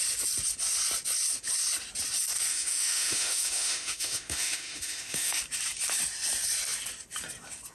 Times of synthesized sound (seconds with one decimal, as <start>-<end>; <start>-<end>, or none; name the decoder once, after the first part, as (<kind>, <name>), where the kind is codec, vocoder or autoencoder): 2.5-5.4 (autoencoder, DAC-VAE)